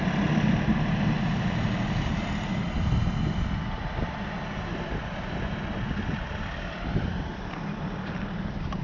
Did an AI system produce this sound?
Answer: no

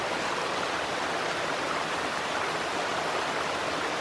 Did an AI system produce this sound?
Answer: no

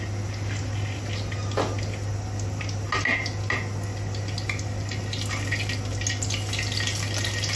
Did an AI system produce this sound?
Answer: no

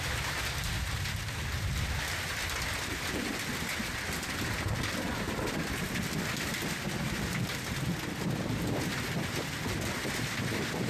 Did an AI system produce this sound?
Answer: no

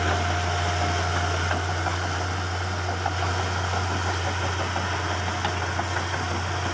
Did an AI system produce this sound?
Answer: no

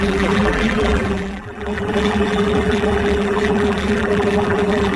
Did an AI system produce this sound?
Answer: yes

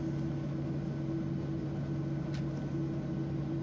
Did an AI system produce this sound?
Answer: no